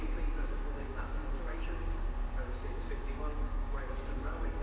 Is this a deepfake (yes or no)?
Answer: yes